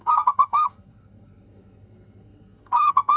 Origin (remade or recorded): remade